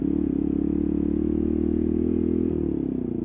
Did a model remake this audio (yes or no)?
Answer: no